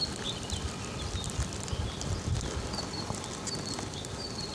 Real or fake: real